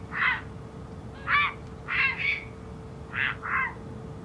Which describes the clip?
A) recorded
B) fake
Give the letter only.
A